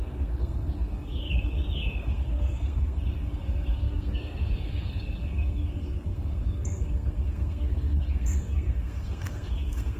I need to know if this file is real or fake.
fake